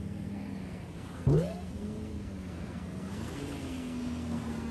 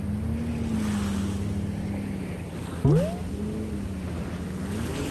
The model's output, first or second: first